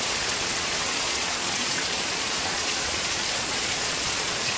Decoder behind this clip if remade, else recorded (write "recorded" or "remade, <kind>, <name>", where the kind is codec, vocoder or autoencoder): remade, vocoder, Vocos